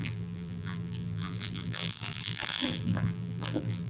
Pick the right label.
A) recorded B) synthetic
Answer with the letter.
B